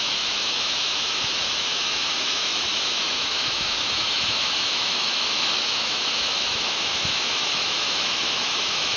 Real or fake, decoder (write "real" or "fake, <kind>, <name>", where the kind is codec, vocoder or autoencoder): fake, autoencoder, DAC-VAE